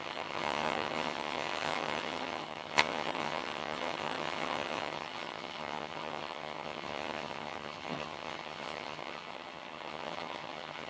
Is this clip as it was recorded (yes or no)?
no